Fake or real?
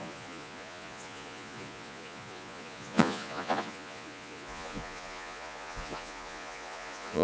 fake